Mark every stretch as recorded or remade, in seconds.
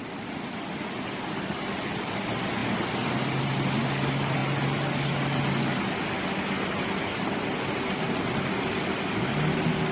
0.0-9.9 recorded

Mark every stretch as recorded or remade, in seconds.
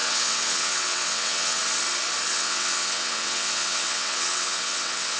0.0-1.6 remade; 1.6-2.3 recorded; 2.3-5.2 remade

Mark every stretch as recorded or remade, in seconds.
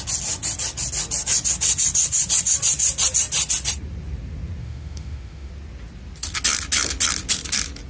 0.0-4.6 recorded; 4.6-5.5 remade; 5.5-7.9 recorded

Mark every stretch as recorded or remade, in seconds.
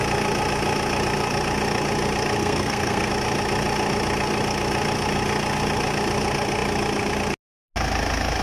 0.0-2.4 recorded; 2.4-3.1 remade; 3.1-8.4 recorded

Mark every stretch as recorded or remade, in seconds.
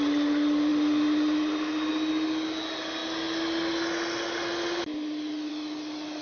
0.0-6.2 recorded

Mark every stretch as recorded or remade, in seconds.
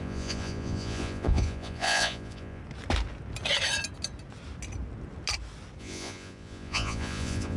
0.0-2.6 remade; 2.6-5.8 recorded; 5.8-7.6 remade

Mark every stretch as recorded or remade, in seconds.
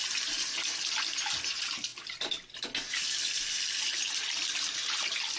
0.0-5.4 recorded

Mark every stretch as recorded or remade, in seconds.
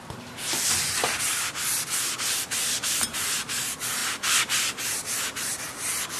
0.0-4.0 remade; 4.0-6.2 recorded